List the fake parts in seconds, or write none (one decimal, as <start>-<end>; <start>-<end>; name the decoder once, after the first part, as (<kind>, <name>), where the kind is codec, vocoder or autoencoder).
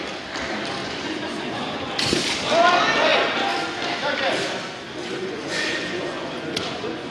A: 0.8-1.9 (vocoder, Vocos); 5.0-7.1